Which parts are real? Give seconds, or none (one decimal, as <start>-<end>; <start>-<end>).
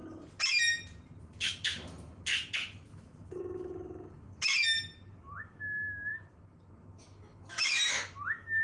0.0-1.2; 2.3-2.9; 4.5-5.1